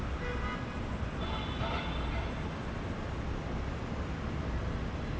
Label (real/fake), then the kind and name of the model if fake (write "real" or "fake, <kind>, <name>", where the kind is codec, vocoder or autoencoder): real